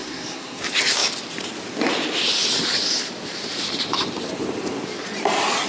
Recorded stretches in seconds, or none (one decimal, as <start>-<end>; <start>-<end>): 0.6-5.7